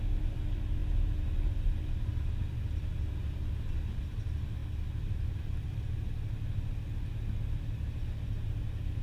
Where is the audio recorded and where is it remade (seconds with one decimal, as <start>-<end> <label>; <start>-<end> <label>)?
0.0-9.0 recorded

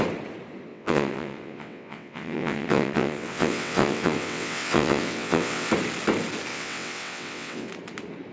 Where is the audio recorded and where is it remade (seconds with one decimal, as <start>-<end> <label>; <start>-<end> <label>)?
0.0-0.7 recorded; 0.7-5.7 remade; 5.7-6.5 recorded; 6.5-7.7 remade; 7.7-8.3 recorded

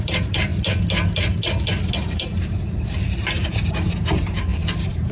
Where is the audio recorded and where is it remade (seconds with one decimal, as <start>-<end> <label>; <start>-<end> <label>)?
0.0-0.5 remade; 0.5-2.0 recorded; 2.0-5.1 remade

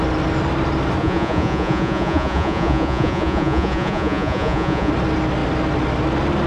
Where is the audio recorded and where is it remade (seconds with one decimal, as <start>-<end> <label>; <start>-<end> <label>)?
0.0-1.0 recorded; 1.0-4.9 remade; 4.9-6.5 recorded

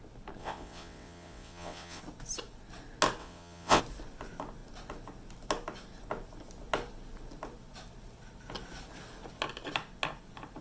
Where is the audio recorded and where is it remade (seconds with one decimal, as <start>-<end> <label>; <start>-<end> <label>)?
0.0-0.4 recorded; 0.4-2.0 remade; 2.0-3.2 recorded; 3.2-3.8 remade; 3.8-10.6 recorded

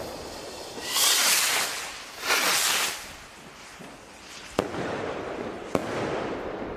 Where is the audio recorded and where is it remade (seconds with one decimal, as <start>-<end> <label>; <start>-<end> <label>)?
0.0-6.8 recorded

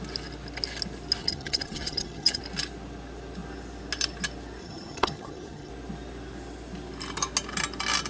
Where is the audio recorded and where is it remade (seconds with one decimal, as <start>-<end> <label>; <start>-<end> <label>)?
0.0-1.2 recorded; 1.2-2.4 remade; 2.4-4.6 recorded; 4.6-5.7 remade; 5.7-8.1 recorded

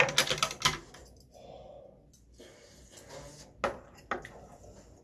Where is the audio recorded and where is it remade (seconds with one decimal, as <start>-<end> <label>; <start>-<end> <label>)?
0.0-5.0 recorded